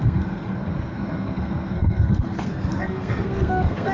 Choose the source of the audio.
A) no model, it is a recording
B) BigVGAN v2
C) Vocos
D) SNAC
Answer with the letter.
D